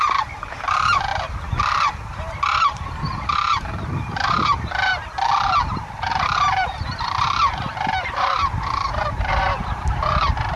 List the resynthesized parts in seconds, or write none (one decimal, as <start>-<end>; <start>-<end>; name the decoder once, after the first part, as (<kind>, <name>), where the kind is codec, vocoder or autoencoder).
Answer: 0.0-1.1 (vocoder, BigVGAN v2); 2.5-4.9; 6.1-10.6